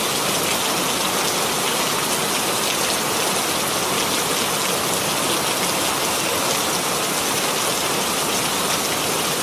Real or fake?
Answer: real